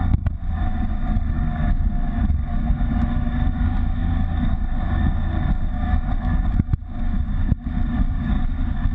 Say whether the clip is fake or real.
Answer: fake